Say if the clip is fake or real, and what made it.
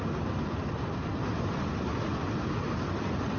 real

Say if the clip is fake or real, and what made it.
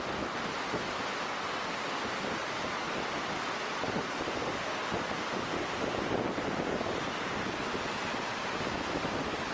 real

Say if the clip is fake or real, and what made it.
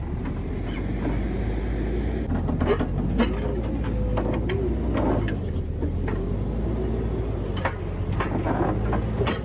real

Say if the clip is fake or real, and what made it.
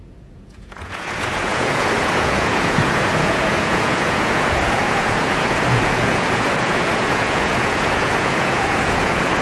fake, vocoder, Vocos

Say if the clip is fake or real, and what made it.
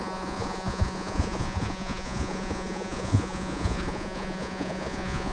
fake, vocoder, Vocos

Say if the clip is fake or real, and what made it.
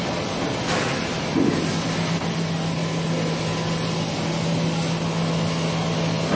real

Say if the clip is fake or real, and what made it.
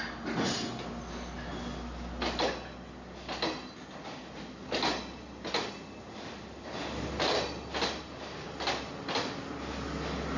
real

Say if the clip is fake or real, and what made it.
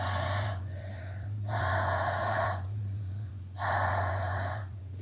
fake, vocoder, Vocos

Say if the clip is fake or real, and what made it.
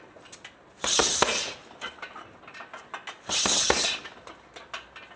real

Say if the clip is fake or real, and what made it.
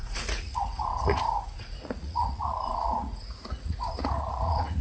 fake, vocoder, Vocos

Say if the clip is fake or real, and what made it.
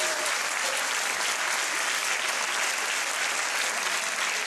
real